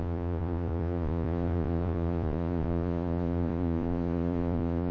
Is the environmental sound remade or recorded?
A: remade